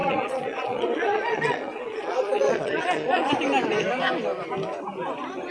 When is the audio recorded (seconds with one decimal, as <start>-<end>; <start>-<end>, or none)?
3.3-5.5